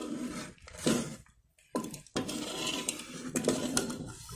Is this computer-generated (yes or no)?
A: yes